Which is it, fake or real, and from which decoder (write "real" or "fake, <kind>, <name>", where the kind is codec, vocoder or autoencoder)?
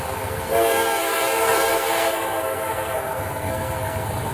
fake, codec, SNAC